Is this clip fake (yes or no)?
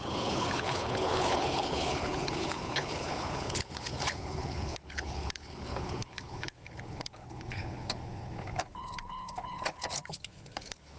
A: yes